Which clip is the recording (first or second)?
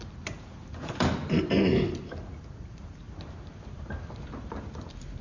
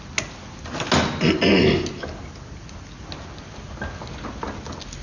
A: second